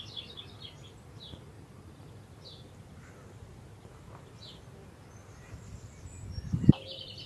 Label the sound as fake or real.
real